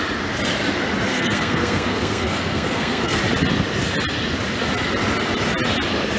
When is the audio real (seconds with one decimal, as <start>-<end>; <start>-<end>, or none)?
0.0-1.1; 3.2-6.2